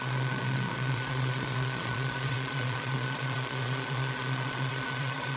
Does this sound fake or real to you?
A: fake